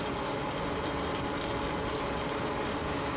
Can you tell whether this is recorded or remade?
recorded